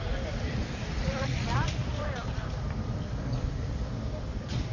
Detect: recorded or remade recorded